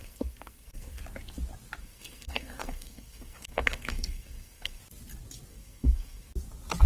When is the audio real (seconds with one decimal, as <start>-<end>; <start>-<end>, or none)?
1.0-1.8; 4.8-5.5; 6.3-6.9